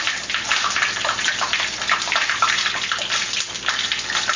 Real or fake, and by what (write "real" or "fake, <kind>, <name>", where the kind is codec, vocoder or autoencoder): real